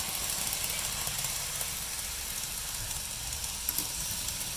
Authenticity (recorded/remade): recorded